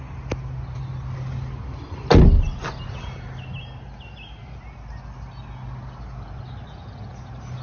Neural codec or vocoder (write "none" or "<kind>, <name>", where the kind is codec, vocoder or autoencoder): none